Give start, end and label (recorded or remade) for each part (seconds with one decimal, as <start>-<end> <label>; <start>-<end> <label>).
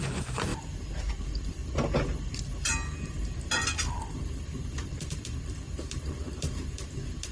0.0-7.3 recorded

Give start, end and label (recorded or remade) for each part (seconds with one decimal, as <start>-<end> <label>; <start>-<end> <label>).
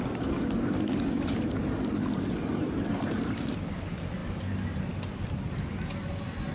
0.0-6.5 recorded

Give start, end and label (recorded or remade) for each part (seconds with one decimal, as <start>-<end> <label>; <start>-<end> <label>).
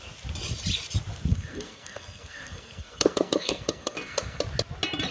0.0-1.3 recorded; 1.3-4.4 remade; 4.4-5.1 recorded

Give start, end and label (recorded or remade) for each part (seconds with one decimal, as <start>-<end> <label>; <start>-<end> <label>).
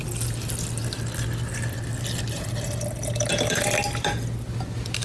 0.0-5.0 recorded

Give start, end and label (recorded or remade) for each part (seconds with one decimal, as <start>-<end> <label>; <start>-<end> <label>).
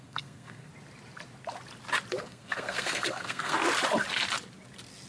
0.0-0.7 remade; 0.7-2.2 recorded; 2.2-3.6 remade; 3.6-5.1 recorded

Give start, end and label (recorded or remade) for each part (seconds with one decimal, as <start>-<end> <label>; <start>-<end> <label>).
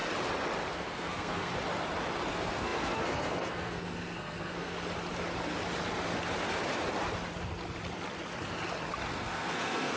0.0-0.7 recorded; 0.7-1.5 remade; 1.5-2.3 recorded; 2.3-4.7 remade; 4.7-9.1 recorded; 9.1-10.0 remade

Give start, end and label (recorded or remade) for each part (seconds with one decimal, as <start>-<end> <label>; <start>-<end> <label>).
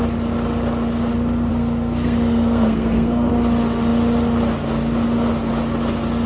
0.0-1.5 recorded; 1.5-3.3 remade; 3.3-6.3 recorded